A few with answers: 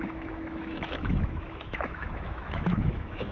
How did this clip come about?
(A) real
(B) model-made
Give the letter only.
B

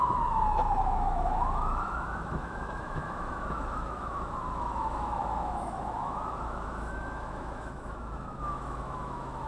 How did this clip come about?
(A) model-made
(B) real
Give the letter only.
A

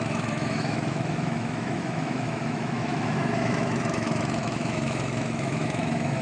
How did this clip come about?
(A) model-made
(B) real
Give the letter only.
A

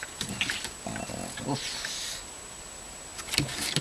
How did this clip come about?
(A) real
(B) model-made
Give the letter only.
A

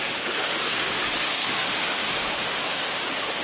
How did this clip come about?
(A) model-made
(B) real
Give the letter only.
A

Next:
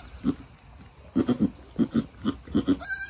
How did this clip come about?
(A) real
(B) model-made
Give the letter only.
A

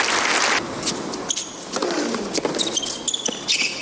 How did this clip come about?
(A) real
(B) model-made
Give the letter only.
A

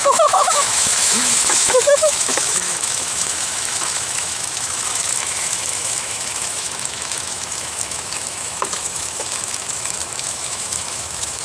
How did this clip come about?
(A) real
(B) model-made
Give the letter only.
B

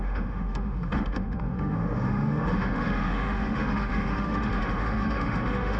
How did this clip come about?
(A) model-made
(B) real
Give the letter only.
A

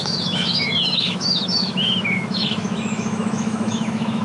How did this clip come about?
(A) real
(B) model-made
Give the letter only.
B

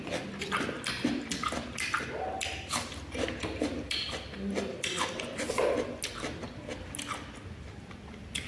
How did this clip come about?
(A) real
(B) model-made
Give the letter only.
A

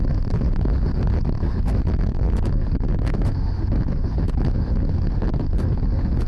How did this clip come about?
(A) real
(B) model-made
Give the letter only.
B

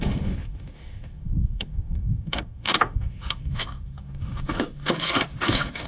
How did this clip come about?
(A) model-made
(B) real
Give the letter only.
A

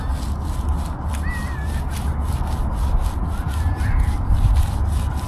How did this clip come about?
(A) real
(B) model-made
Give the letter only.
A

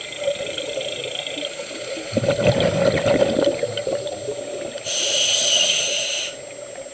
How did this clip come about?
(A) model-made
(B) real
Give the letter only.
B